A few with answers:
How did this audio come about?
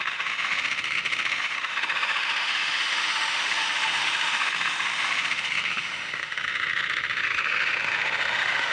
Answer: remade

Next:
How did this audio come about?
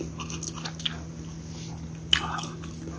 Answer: recorded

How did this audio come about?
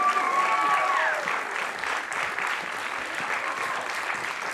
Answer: recorded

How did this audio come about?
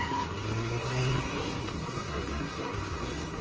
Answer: remade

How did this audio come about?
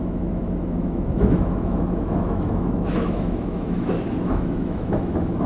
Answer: remade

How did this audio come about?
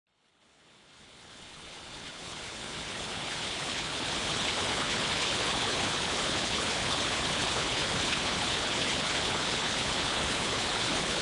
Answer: remade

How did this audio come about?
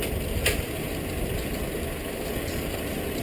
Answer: recorded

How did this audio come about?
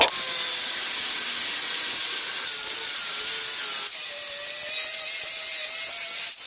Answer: recorded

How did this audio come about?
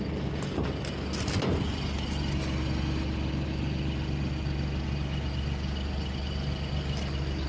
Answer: recorded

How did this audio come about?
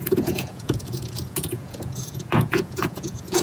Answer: remade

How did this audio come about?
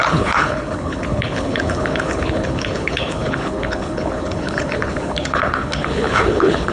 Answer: remade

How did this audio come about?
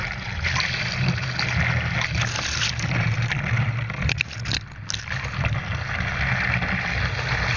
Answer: recorded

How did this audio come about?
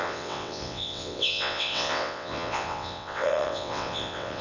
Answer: remade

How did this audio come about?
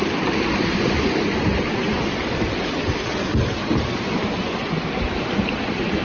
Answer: recorded